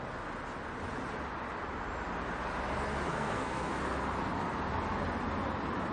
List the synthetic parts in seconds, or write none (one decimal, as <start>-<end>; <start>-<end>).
3.1-3.7